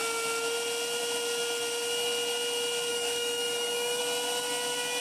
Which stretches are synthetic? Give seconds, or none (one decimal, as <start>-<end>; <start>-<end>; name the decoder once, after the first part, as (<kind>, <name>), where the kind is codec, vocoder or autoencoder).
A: 2.9-4.0 (codec, DAC)